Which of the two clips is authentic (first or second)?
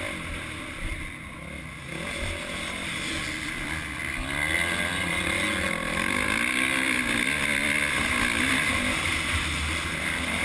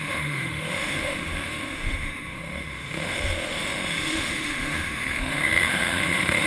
first